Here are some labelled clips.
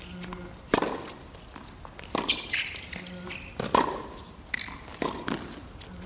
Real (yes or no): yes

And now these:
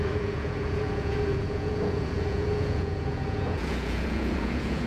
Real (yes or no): no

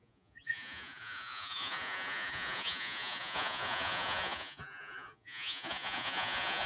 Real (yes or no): no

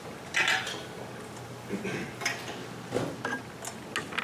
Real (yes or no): yes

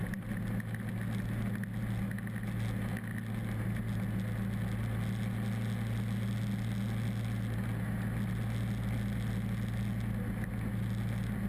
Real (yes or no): yes